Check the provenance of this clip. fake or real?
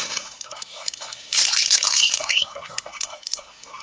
fake